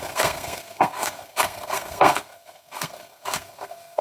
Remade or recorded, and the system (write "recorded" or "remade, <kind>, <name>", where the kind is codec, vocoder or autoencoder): remade, codec, SNAC